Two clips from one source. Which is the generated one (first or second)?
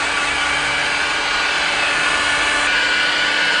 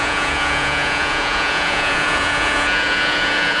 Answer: second